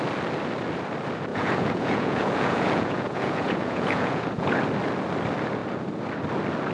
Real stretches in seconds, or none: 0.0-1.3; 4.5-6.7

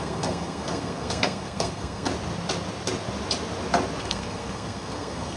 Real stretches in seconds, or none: 2.1-4.0

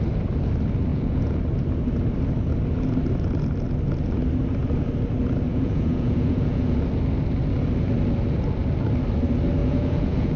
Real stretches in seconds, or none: 0.0-0.9; 1.4-5.5; 6.8-9.6

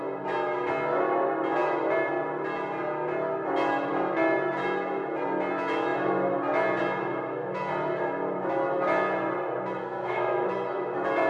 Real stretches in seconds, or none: 0.0-9.8; 10.5-11.3

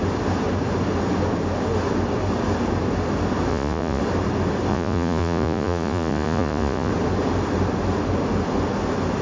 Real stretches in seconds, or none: 0.0-3.5; 4.0-4.7; 6.9-9.2

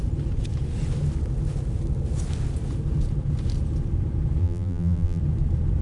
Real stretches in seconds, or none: 0.0-4.4; 5.2-5.8

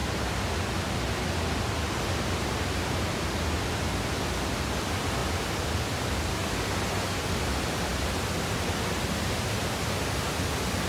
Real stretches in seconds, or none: 0.0-10.9